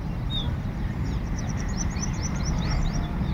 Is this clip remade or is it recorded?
remade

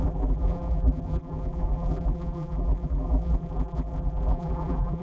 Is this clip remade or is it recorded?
remade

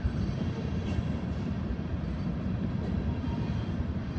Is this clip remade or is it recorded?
remade